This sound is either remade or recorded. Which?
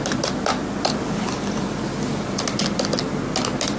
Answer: recorded